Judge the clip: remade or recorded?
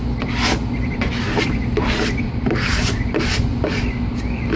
recorded